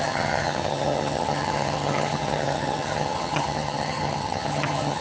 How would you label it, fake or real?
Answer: fake